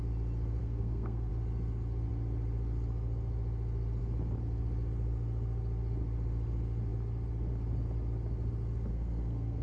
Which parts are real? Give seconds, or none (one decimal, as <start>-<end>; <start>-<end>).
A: 0.0-0.6; 1.3-8.9